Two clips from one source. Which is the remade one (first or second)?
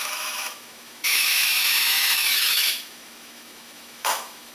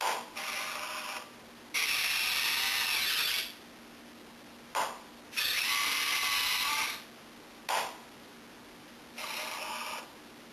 first